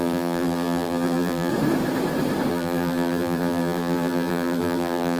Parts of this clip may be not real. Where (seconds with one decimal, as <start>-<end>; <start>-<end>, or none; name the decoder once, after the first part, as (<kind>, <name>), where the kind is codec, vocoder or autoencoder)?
0.0-1.5 (vocoder, BigVGAN v2); 2.5-5.2